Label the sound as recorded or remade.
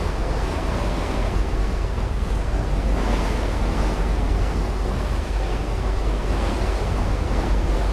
remade